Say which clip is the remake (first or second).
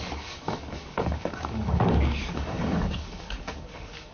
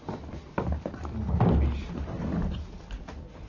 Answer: first